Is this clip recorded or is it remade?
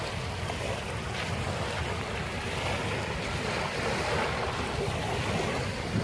recorded